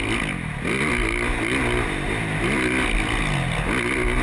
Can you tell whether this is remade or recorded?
recorded